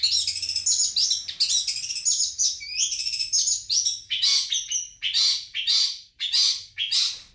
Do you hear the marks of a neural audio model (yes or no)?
no